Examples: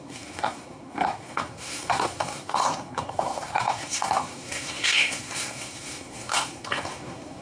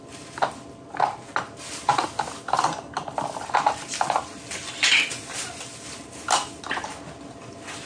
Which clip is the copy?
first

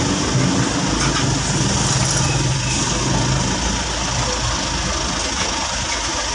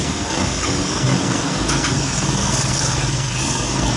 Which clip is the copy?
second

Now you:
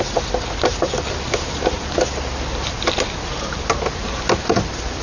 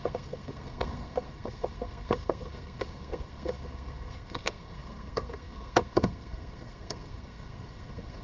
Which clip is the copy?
second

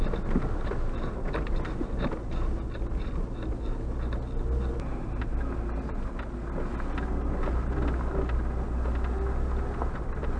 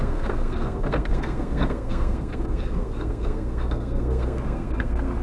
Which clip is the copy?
second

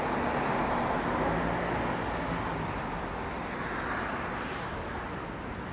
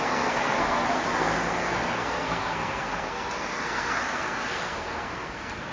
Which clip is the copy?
second